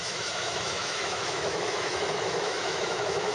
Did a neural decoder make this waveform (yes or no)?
yes